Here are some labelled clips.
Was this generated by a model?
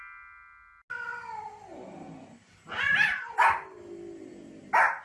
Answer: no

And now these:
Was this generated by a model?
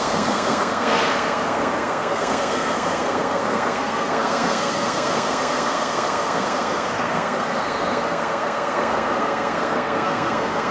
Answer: yes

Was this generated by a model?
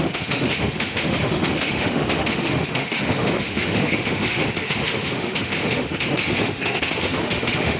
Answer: yes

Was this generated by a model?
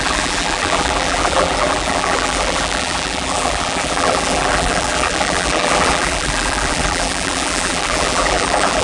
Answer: yes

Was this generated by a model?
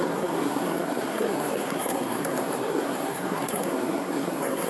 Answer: yes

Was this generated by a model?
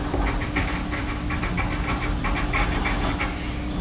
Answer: no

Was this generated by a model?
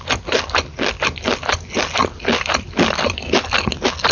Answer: no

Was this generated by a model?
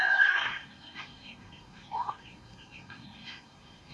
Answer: yes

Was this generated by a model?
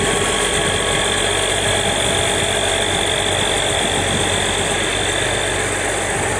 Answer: no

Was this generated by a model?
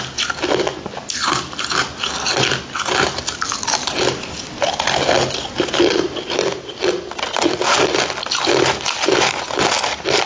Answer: no